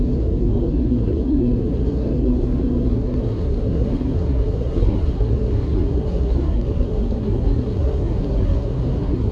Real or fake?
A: fake